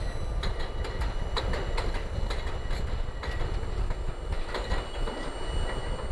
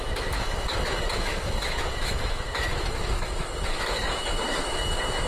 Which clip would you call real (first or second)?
first